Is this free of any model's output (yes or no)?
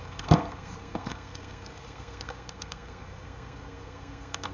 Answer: no